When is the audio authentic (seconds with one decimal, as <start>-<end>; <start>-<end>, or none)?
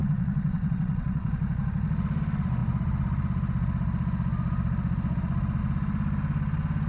1.3-6.9